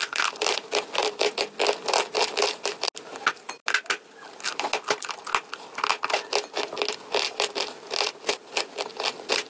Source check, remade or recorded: recorded